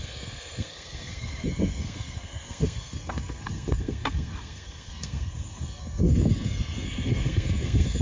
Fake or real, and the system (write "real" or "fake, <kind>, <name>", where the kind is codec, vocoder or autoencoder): fake, codec, SNAC